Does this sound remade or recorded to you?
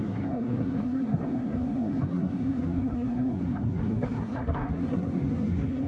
remade